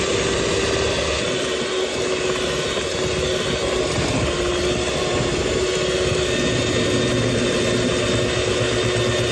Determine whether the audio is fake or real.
real